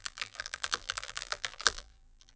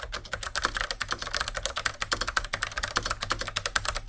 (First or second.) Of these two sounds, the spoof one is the first